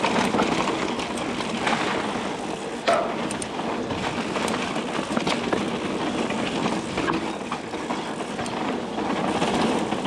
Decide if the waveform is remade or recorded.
recorded